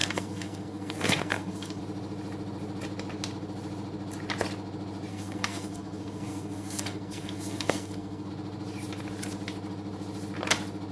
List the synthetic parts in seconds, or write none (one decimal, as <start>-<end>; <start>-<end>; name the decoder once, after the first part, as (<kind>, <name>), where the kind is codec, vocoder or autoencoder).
0.0-1.8 (codec, SNAC); 5.1-8.3